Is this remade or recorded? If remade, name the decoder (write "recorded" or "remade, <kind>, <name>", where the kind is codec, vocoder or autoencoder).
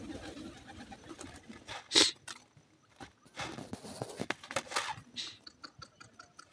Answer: recorded